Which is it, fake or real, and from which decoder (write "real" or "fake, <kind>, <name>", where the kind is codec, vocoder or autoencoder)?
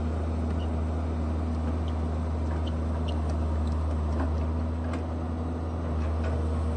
real